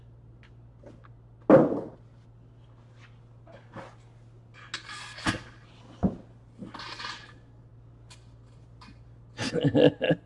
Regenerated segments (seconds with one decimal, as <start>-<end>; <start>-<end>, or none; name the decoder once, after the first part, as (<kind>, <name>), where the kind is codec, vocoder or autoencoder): none